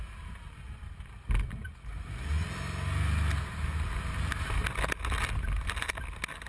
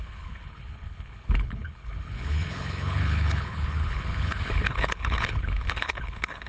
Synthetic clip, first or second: second